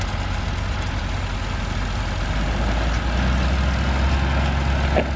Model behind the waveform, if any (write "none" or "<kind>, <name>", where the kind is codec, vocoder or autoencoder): none